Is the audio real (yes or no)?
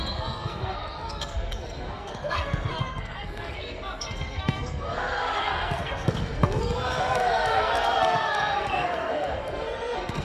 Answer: no